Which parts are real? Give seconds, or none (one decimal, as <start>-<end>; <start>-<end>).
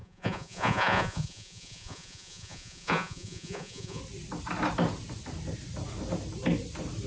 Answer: 4.0-7.1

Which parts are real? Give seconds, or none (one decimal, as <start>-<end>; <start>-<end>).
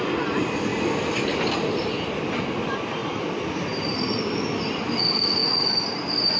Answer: 0.7-2.4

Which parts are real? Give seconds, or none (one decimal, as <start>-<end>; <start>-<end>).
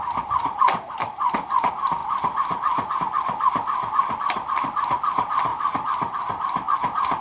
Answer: 0.0-7.2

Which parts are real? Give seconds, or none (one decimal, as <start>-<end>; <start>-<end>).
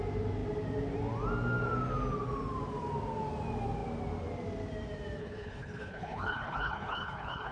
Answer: 0.0-5.2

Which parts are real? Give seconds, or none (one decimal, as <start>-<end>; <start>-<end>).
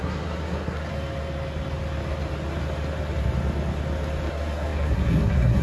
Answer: 0.9-4.3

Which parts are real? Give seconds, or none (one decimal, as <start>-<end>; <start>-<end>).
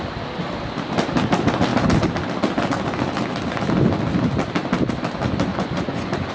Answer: 0.0-5.5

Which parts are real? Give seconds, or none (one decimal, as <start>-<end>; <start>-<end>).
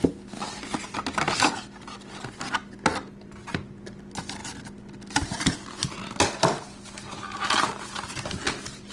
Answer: 0.0-8.9